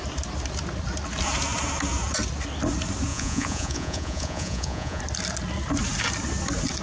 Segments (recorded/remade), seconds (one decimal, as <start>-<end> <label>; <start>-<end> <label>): 0.0-3.1 recorded; 3.1-5.0 remade; 5.0-6.8 recorded